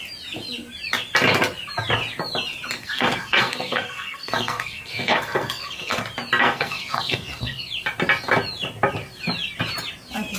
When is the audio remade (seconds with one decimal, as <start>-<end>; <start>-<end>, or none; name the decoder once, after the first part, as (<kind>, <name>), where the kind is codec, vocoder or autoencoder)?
2.8-6.0 (codec, SNAC); 6.4-7.7